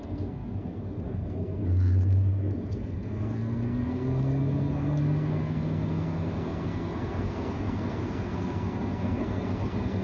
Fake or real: fake